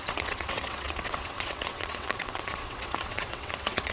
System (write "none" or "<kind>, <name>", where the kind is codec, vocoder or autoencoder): vocoder, WaveNeXt